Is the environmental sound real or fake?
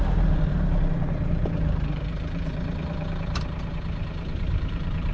fake